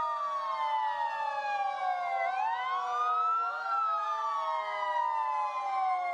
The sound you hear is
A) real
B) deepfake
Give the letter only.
A